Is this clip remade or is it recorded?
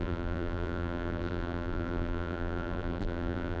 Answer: remade